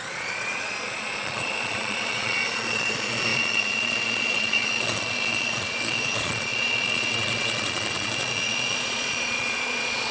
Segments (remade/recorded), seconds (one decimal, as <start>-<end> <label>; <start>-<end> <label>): 0.0-10.1 remade